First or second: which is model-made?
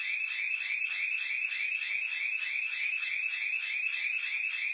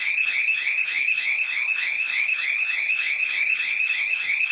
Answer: second